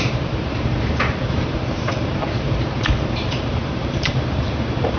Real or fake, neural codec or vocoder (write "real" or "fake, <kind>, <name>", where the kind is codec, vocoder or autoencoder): fake, vocoder, BigVGAN v2